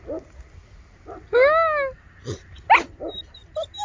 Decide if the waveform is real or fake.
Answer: real